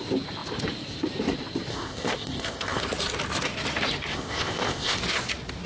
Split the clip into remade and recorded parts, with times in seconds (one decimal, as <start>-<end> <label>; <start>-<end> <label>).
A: 0.0-1.7 recorded; 1.7-2.8 remade; 2.8-4.1 recorded; 4.1-5.0 remade; 5.0-5.7 recorded